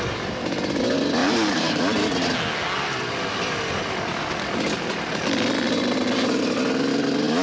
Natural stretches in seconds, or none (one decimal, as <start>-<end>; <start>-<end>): 0.0-1.2; 1.8-7.4